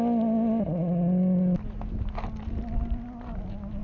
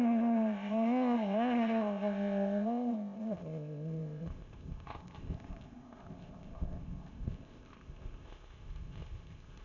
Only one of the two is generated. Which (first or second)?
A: second